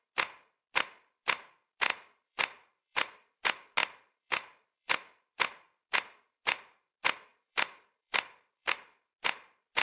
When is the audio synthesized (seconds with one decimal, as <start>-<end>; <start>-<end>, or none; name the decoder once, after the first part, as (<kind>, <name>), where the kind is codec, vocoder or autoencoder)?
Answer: 1.9-3.4 (vocoder, BigVGAN v2); 3.8-5.2; 7.3-8.7